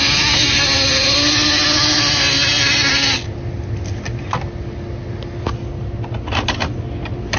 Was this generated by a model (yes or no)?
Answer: no